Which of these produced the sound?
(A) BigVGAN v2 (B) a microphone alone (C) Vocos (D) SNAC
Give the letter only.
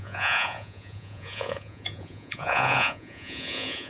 C